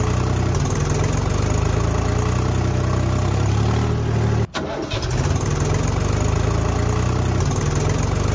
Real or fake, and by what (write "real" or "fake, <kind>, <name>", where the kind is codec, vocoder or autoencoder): real